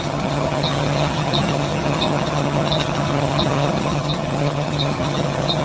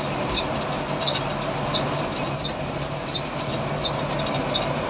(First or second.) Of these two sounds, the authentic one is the second